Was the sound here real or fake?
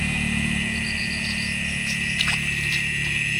real